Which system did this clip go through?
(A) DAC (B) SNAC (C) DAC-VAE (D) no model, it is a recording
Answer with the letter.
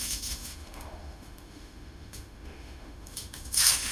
C